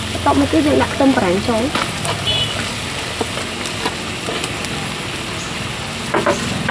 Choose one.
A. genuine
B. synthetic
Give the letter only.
A